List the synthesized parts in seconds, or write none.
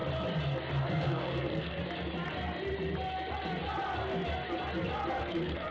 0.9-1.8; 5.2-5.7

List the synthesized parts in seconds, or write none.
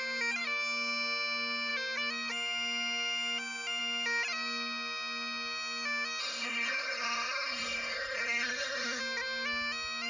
6.2-9.0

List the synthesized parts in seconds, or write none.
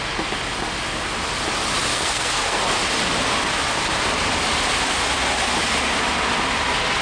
1.9-2.6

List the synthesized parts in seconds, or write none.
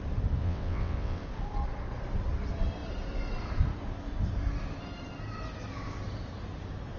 0.4-1.2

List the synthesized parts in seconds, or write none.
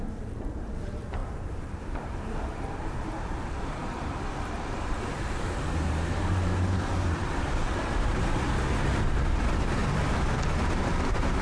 0.0-11.4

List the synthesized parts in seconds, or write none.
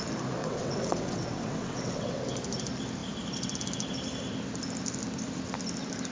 0.4-2.2